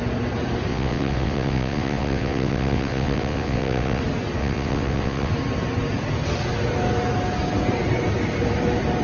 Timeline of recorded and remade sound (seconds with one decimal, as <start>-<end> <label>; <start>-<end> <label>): 0.0-0.7 recorded; 0.7-4.0 remade; 4.0-4.4 recorded; 4.4-5.3 remade; 5.3-9.0 recorded